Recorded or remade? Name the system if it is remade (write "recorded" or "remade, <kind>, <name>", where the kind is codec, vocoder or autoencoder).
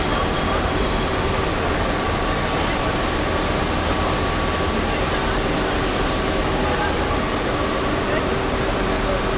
recorded